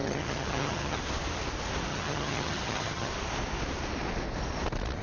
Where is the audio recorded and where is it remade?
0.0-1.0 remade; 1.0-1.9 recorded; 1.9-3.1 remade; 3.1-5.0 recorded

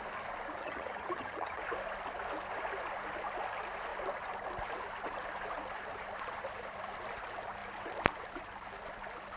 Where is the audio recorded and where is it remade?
0.0-0.6 recorded; 0.6-1.6 remade; 1.6-9.4 recorded

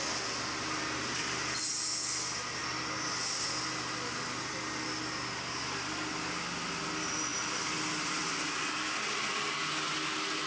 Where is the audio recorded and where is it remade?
0.0-10.5 recorded

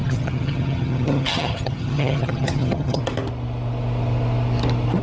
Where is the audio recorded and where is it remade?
0.0-3.0 remade; 3.0-5.0 recorded

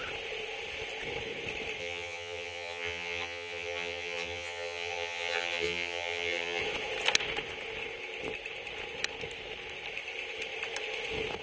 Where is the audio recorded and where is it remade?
0.0-1.8 recorded; 1.8-6.6 remade; 6.6-11.4 recorded

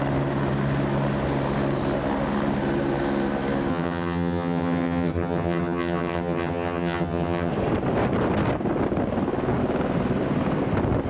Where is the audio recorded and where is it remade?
0.0-3.7 recorded; 3.7-7.5 remade; 7.5-11.1 recorded

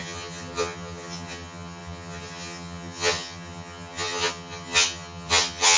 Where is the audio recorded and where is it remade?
0.0-5.8 remade

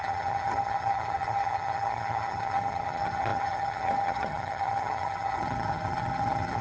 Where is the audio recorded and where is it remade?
0.0-6.6 remade